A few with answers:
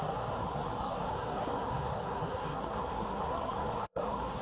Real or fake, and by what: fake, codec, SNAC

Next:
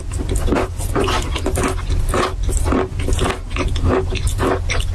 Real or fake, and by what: real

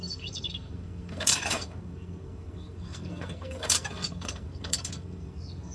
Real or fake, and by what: fake, codec, SNAC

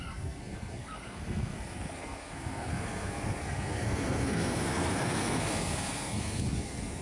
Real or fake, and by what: fake, codec, SNAC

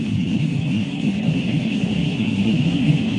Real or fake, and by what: fake, codec, SNAC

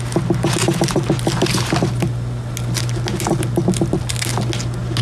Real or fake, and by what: real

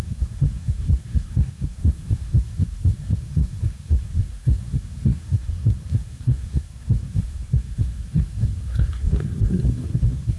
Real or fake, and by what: fake, codec, SNAC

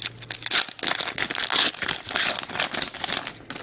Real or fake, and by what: real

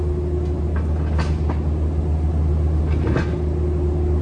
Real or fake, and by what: real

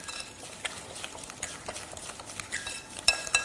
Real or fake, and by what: real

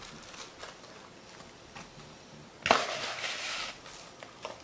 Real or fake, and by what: real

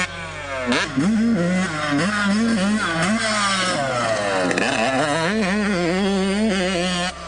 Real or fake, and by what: real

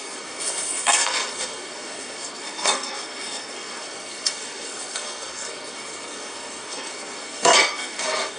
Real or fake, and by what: fake, codec, SNAC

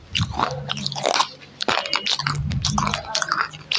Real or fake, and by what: real